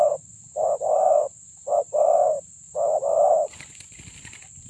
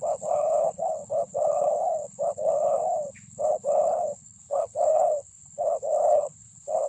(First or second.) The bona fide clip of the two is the first